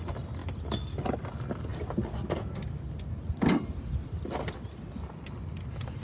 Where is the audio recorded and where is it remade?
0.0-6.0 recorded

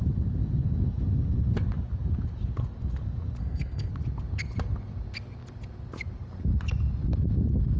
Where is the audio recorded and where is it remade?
0.0-3.4 recorded; 3.4-3.9 remade; 3.9-7.8 recorded

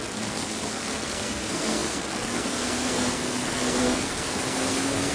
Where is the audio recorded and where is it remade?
0.0-5.1 remade

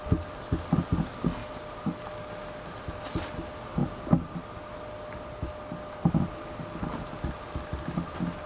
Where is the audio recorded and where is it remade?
0.0-8.5 recorded